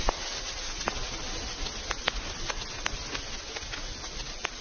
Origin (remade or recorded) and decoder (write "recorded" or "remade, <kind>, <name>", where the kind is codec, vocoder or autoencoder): recorded